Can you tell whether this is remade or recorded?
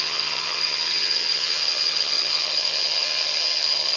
remade